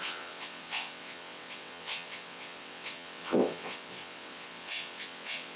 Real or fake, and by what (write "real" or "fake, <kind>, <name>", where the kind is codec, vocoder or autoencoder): fake, vocoder, WaveNeXt